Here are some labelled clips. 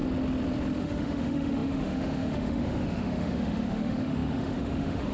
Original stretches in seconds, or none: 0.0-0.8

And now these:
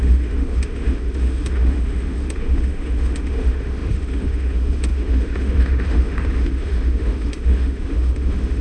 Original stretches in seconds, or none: none

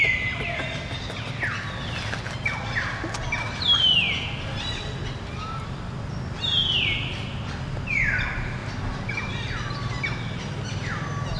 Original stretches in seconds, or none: 0.0-11.4